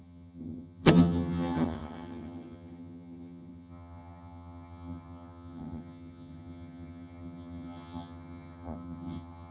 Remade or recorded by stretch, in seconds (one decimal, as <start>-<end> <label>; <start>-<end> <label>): 0.0-9.5 remade